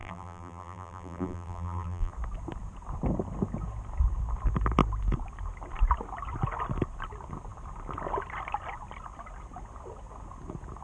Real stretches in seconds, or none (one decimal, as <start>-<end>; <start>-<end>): 2.1-10.8